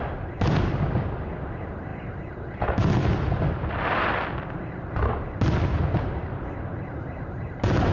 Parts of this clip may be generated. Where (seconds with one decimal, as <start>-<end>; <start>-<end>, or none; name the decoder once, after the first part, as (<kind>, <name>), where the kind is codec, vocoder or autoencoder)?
none